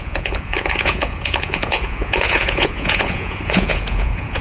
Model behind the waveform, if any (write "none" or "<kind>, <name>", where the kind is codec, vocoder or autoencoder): vocoder, Vocos